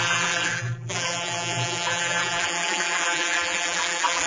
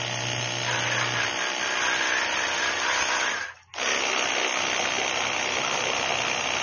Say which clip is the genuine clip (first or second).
second